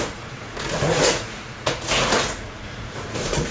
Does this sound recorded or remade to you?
remade